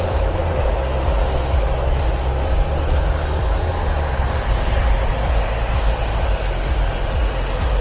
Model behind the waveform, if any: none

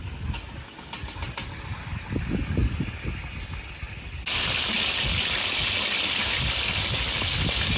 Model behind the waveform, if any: none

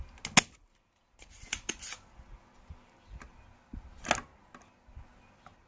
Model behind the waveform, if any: none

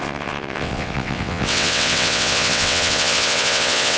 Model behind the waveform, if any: vocoder, WaveNeXt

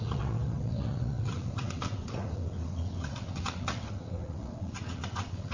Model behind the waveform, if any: vocoder, WaveNeXt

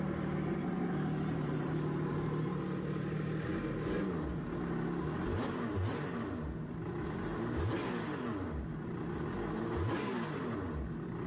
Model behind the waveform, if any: none